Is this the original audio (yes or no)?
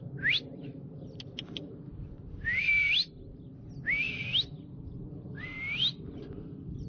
yes